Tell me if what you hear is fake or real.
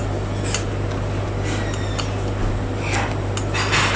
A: real